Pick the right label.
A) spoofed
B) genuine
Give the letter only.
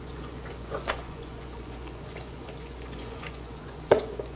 A